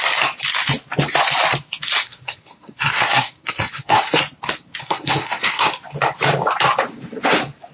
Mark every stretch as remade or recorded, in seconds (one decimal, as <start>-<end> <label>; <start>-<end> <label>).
0.0-2.0 recorded; 2.0-4.2 remade; 4.2-4.8 recorded; 4.8-5.7 remade; 5.7-7.7 recorded

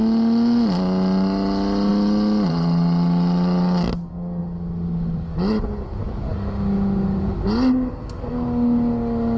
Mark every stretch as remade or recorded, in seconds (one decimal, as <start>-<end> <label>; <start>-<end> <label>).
0.0-9.4 recorded

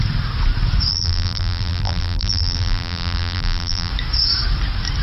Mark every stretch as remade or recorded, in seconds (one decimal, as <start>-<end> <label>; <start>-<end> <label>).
0.0-0.9 recorded; 0.9-3.9 remade; 3.9-5.0 recorded